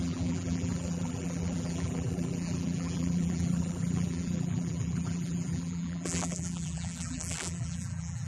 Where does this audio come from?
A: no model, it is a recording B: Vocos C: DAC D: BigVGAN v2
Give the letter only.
D